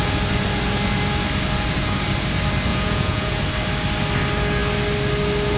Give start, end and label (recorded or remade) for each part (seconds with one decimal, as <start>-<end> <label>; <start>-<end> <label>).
0.0-2.7 recorded; 2.7-3.4 remade; 3.4-5.6 recorded